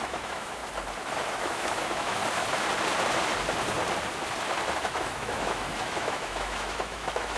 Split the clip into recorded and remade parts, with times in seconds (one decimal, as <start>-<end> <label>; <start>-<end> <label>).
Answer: 0.0-0.6 remade; 0.6-1.1 recorded; 1.1-2.2 remade; 2.2-4.8 recorded; 4.8-7.4 remade